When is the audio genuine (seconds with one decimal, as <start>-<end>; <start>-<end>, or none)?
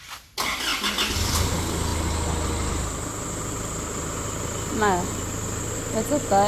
0.0-6.5